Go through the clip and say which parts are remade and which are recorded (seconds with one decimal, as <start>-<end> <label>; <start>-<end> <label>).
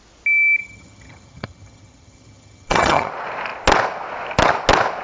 0.0-0.6 recorded; 0.6-3.1 remade; 3.1-5.0 recorded